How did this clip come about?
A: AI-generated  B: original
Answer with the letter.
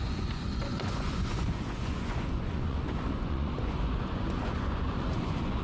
A